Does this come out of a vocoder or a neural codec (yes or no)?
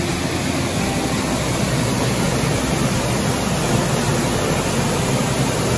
no